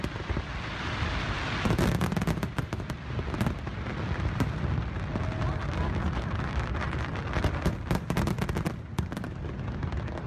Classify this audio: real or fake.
real